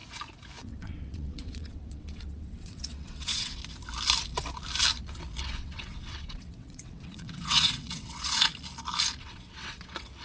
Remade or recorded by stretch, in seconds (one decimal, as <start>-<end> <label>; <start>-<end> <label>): 0.0-0.6 recorded; 0.6-3.6 remade; 3.6-5.4 recorded; 5.4-8.5 remade; 8.5-9.2 recorded; 9.2-10.2 remade